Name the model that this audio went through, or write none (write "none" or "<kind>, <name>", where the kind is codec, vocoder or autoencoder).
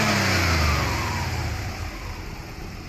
none